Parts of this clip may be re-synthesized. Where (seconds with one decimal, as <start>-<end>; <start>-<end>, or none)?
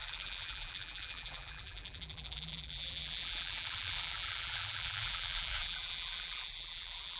0.0-7.2